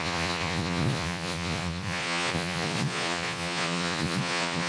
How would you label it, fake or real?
fake